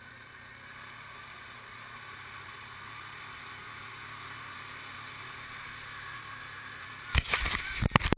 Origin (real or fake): real